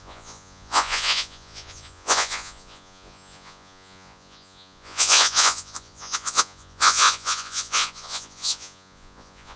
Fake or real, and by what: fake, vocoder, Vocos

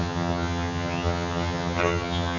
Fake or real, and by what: fake, vocoder, HiFi-GAN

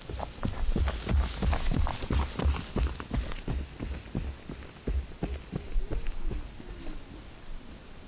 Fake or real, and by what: real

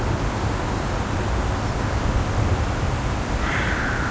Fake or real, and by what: real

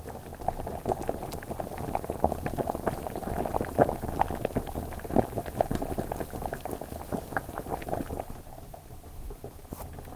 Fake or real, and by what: real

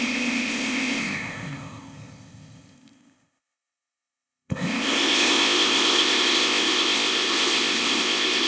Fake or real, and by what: fake, codec, ZipCodec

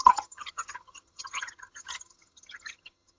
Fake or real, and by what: fake, vocoder, HiFi-GAN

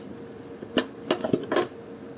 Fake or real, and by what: real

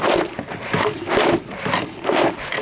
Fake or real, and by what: real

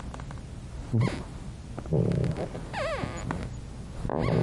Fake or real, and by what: real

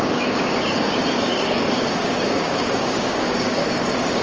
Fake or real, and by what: fake, codec, DAC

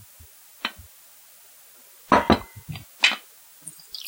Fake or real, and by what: real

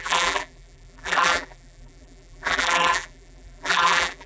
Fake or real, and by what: fake, vocoder, BigVGAN v2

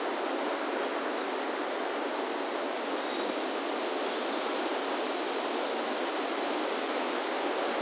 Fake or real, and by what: real